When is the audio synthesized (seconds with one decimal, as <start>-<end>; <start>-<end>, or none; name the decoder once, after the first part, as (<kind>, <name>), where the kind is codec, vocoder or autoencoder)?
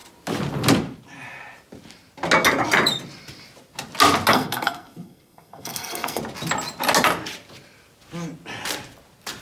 4.3-6.2 (codec, SNAC)